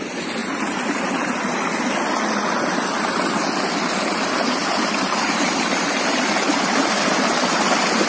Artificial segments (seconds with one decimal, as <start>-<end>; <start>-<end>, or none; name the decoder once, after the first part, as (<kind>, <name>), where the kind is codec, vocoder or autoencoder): 4.6-7.1 (vocoder, BigVGAN v2)